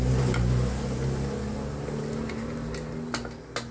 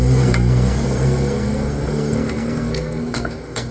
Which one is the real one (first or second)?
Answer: first